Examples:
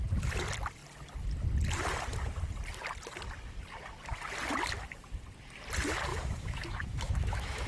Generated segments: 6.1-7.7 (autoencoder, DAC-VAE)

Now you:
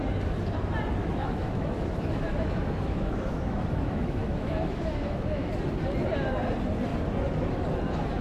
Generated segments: 1.0-5.5 (autoencoder, DAC-VAE)

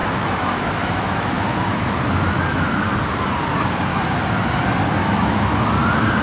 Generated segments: 0.0-2.0 (autoencoder, DAC-VAE); 3.9-4.5; 5.0-5.8

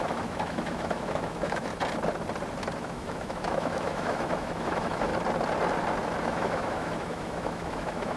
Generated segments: 0.0-1.7 (autoencoder, DAC-VAE); 2.8-5.1; 6.2-8.2